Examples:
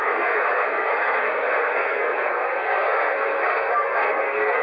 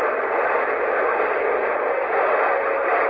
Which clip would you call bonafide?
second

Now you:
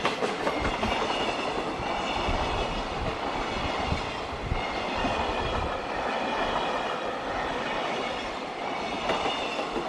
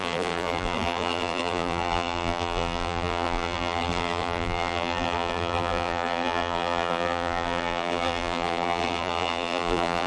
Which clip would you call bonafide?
first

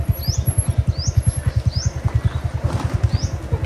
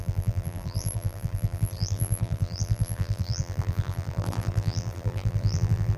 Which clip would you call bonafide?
first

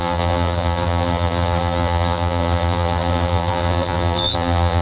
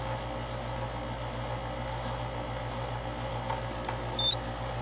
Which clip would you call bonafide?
second